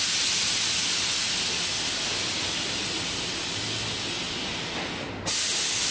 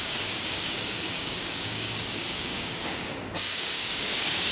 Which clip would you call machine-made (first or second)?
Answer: second